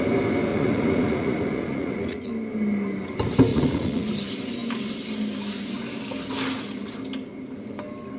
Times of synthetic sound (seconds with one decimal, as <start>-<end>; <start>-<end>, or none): 0.5-2.3; 3.5-4.1